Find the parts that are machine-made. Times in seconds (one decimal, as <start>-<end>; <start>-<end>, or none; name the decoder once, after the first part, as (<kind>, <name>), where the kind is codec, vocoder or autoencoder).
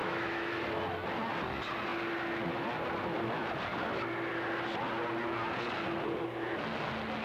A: 0.0-0.5 (autoencoder, DAC-VAE)